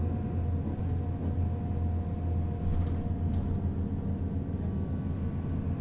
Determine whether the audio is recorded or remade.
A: recorded